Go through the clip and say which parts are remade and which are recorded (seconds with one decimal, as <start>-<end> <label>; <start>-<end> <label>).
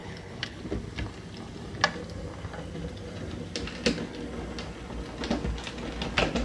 0.0-0.6 remade; 0.6-6.4 recorded